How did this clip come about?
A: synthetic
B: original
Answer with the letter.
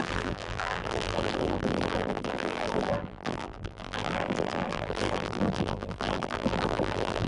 A